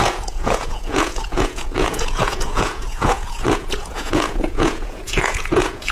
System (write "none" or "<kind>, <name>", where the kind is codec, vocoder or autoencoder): vocoder, Vocos